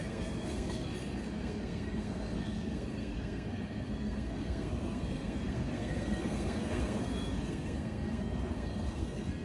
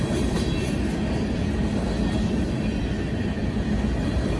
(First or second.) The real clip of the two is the second